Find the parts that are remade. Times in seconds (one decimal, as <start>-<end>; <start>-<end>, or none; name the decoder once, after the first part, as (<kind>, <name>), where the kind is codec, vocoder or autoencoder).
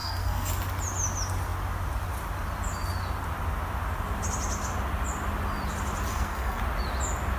0.0-0.5 (codec, SNAC); 6.1-6.6